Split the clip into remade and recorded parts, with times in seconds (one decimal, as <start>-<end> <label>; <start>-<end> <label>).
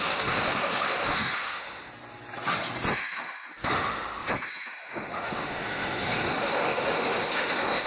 0.0-1.9 remade; 1.9-2.9 recorded; 2.9-7.9 remade